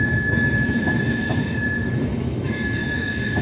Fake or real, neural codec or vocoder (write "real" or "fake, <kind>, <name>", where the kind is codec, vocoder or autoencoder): fake, autoencoder, DAC-VAE